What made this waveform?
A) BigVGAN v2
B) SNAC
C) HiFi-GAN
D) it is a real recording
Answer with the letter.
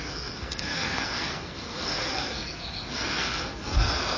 B